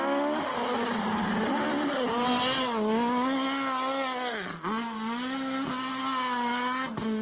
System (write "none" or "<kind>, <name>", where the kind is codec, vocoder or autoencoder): none